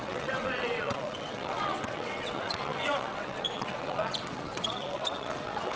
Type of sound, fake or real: fake